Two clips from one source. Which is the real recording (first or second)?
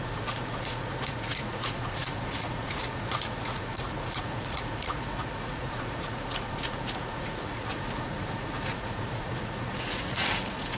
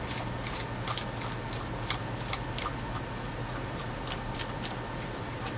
second